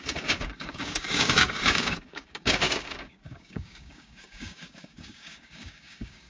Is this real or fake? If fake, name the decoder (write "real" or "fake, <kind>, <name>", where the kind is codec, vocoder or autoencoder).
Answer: fake, codec, DAC